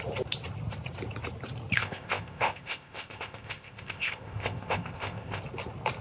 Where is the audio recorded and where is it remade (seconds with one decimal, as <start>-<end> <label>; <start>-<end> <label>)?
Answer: 0.0-1.8 recorded; 1.8-5.4 remade; 5.4-6.0 recorded